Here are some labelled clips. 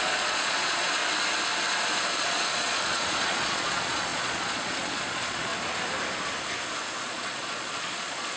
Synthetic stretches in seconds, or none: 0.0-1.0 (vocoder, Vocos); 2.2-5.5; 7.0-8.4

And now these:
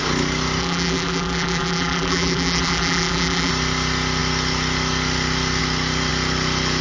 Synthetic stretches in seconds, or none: 0.6-3.5 (vocoder, BigVGAN v2)

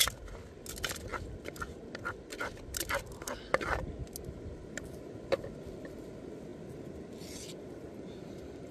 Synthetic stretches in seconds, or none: none